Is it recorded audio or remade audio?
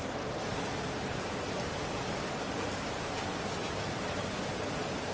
recorded